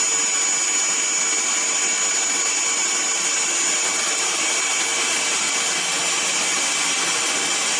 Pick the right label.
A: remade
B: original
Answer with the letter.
B